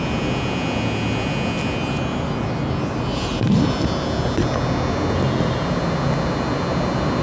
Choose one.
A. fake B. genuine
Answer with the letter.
B